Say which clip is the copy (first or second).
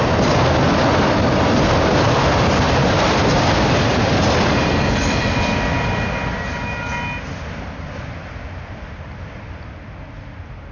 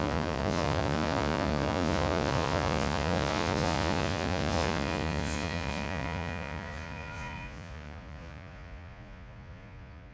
second